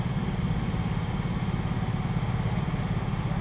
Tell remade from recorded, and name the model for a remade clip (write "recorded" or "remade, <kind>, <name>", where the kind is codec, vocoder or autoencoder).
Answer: recorded